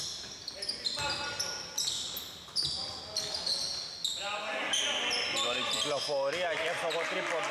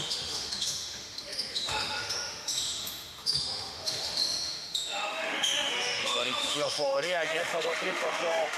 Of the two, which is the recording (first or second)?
first